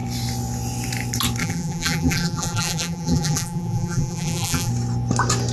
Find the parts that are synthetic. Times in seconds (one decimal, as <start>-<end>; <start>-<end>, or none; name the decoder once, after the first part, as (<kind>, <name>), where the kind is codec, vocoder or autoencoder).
1.4-4.7 (vocoder, BigVGAN v2)